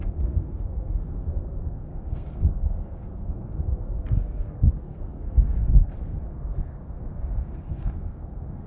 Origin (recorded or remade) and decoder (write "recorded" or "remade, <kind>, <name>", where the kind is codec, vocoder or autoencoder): remade, codec, SNAC